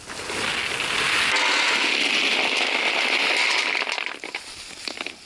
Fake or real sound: real